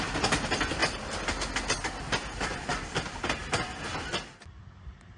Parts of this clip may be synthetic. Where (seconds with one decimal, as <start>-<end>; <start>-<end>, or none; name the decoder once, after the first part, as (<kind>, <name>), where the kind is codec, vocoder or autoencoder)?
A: none